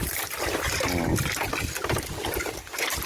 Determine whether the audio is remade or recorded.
recorded